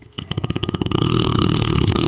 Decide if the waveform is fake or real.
fake